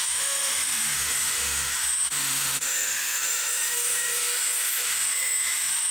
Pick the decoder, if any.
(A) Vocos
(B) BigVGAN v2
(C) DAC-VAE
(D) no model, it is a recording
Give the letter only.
C